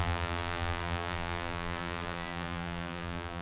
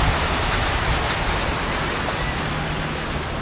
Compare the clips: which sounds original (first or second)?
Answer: second